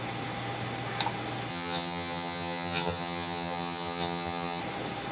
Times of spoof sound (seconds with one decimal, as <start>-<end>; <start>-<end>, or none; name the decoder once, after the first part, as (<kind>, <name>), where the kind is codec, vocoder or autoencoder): 1.5-4.6 (vocoder, HiFi-GAN)